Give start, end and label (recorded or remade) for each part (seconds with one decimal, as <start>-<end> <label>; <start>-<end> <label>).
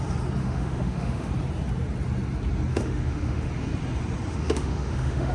0.0-0.4 recorded; 0.4-1.3 remade; 1.3-2.7 recorded; 2.7-3.5 remade; 3.5-4.3 recorded; 4.3-5.3 remade